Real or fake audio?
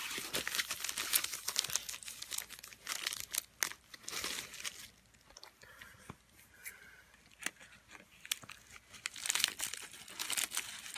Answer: real